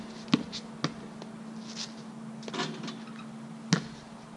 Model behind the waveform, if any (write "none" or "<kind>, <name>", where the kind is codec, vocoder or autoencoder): none